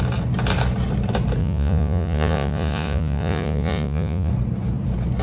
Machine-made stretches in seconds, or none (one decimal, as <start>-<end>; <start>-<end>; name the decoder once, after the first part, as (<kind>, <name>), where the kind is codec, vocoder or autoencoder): 1.4-4.3 (vocoder, Vocos)